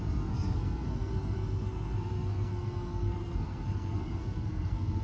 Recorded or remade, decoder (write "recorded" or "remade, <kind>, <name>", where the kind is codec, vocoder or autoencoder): remade, codec, SNAC